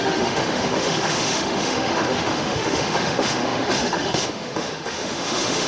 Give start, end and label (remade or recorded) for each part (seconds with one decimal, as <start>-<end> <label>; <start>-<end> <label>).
0.0-5.7 remade